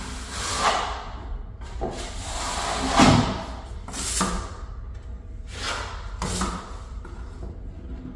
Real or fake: real